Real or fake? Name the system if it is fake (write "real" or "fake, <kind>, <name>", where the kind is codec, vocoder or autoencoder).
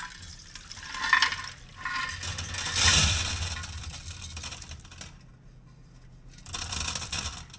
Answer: real